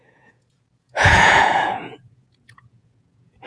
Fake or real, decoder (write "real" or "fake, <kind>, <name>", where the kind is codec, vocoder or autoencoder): fake, vocoder, Vocos